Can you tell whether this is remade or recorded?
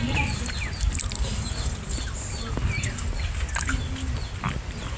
recorded